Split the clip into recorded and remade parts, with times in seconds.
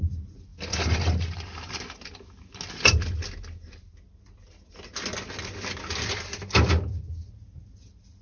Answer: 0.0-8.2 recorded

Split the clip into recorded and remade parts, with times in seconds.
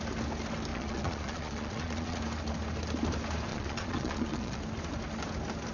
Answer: 0.0-0.7 recorded; 0.7-2.2 remade; 2.2-3.5 recorded; 3.5-4.6 remade; 4.6-5.7 recorded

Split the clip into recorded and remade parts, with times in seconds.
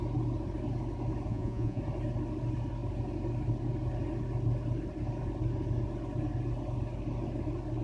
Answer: 0.0-1.3 recorded; 1.3-1.8 remade; 1.8-7.8 recorded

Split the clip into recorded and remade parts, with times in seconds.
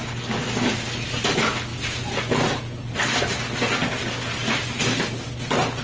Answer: 0.0-5.8 recorded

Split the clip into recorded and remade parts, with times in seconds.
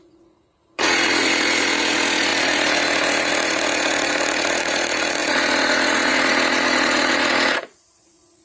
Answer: 0.0-8.4 remade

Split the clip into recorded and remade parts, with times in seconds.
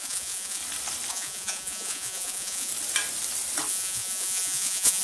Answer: 0.0-0.6 remade; 0.6-1.1 recorded; 1.1-2.7 remade; 2.7-3.7 recorded; 3.7-5.0 remade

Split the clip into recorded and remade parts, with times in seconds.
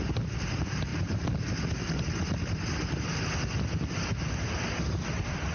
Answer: 0.0-5.5 recorded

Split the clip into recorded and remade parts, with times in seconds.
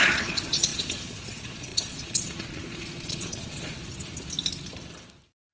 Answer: 0.0-3.9 remade; 3.9-5.5 recorded